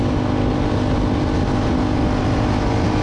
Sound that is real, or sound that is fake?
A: real